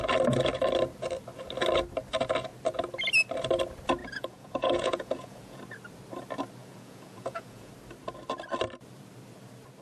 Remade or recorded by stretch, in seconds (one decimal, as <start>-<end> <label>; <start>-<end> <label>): 0.0-4.0 recorded; 4.0-5.6 remade; 5.6-6.6 recorded; 6.6-7.7 remade; 7.7-9.8 recorded